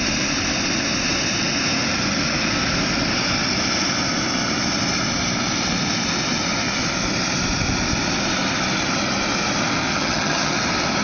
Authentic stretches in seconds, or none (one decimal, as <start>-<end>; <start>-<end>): 0.0-9.9; 10.5-11.0